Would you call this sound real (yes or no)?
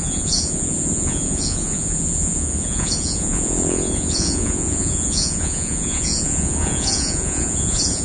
no